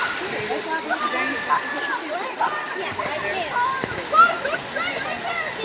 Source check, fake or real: real